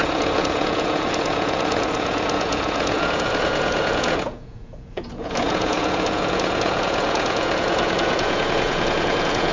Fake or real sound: fake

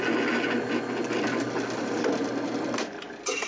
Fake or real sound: real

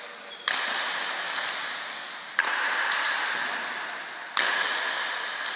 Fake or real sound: real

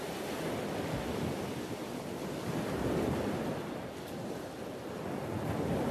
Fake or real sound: real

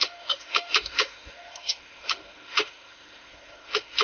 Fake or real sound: fake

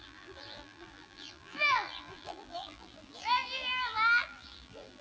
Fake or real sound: fake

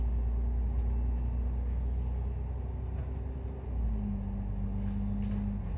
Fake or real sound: real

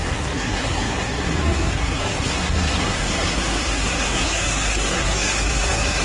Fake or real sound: fake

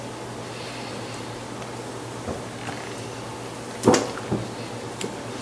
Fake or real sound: real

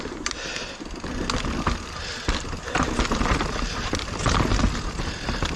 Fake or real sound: real